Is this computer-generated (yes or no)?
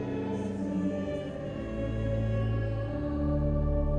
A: no